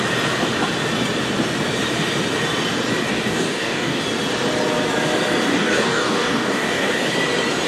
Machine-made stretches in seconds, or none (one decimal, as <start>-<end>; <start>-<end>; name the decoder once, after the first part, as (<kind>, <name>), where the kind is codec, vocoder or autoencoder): 3.1-4.0 (codec, DAC); 5.5-7.1